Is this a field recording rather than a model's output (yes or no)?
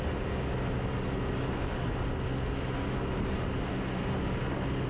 yes